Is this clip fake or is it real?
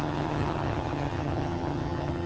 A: fake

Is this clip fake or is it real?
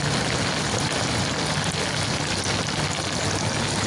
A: real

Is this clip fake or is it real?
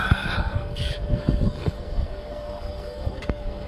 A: fake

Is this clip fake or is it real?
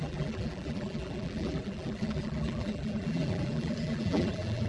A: fake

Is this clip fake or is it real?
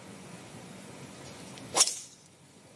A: fake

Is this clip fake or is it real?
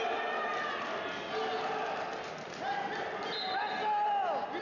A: real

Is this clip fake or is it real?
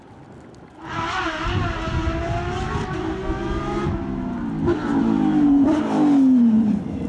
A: real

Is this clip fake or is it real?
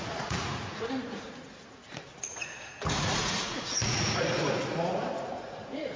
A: fake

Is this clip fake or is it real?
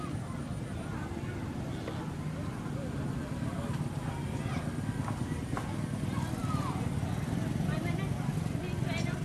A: real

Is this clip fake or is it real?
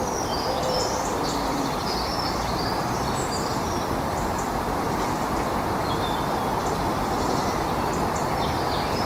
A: fake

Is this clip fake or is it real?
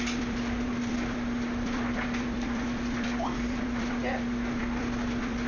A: fake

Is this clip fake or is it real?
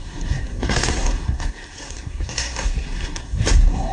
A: fake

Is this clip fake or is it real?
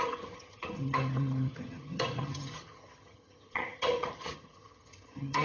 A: fake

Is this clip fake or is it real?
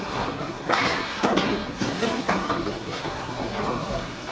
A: fake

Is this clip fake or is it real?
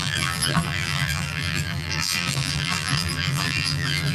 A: fake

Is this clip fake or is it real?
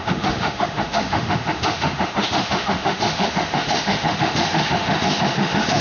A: fake